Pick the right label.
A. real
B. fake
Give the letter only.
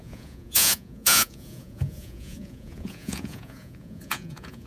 B